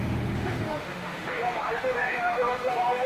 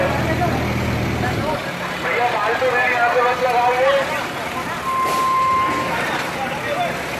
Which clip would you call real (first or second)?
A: second